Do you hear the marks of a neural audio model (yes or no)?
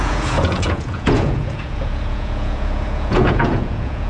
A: yes